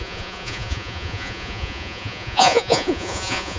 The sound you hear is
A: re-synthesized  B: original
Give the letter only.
A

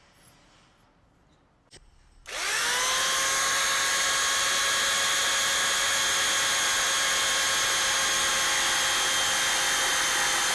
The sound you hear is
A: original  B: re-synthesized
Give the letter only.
A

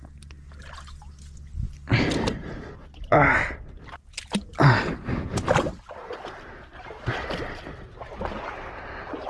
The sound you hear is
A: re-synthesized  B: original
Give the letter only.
B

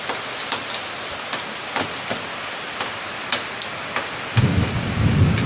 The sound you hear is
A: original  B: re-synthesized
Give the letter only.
A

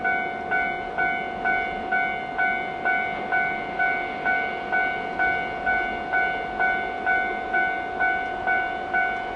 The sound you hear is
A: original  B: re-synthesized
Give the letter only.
A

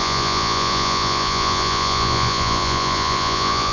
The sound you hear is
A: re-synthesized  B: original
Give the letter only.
A